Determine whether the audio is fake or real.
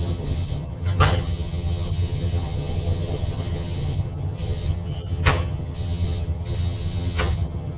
fake